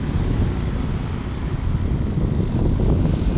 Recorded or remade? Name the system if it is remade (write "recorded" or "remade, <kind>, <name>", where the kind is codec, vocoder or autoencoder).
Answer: recorded